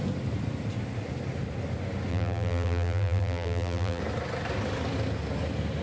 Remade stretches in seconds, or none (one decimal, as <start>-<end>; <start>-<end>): 2.1-4.0